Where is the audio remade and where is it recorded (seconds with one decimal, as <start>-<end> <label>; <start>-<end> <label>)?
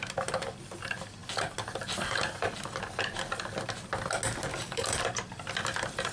0.0-4.5 recorded; 4.5-5.0 remade; 5.0-6.1 recorded